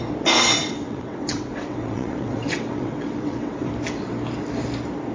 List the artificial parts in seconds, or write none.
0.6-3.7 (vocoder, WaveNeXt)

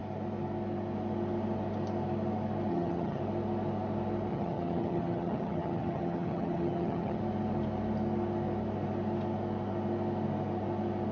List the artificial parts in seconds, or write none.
2.7-3.2 (vocoder, HiFi-GAN); 4.3-7.2

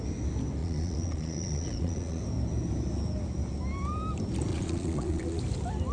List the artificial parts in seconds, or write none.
0.6-2.2 (vocoder, Vocos); 4.5-5.4

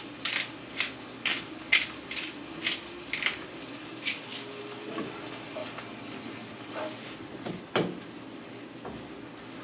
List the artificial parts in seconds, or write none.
1.3-5.1 (vocoder, BigVGAN v2); 5.6-7.6

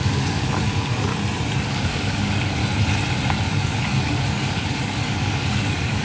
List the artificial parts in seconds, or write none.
0.0-1.1 (codec, DAC); 1.7-2.6; 3.3-6.0